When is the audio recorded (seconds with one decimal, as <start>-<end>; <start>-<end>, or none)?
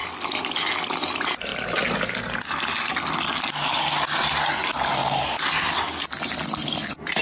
0.0-7.2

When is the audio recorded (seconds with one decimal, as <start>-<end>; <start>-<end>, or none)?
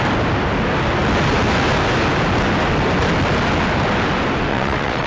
0.0-4.5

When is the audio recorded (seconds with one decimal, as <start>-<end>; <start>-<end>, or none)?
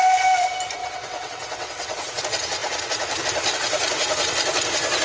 0.0-0.8; 2.2-5.0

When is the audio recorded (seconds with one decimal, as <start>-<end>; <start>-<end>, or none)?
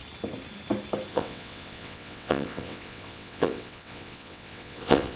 0.0-1.1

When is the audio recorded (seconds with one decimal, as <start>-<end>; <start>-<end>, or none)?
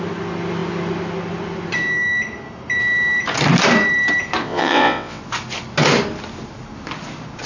0.0-4.4; 5.2-7.5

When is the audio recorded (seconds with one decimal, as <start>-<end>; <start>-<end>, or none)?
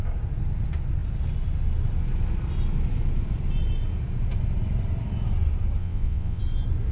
0.0-5.8; 6.4-6.9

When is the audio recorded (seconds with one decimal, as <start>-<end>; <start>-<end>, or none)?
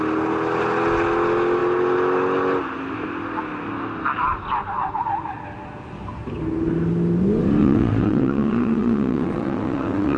0.0-7.6